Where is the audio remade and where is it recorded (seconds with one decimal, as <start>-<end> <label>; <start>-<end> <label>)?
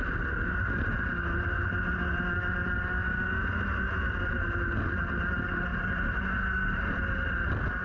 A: 0.0-7.8 recorded